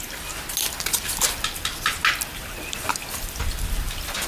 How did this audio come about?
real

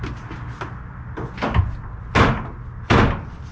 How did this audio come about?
real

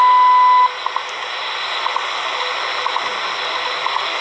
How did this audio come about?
real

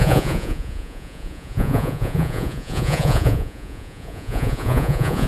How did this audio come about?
fake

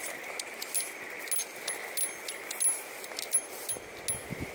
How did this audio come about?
real